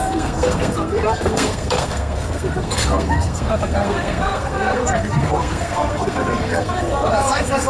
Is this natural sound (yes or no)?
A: no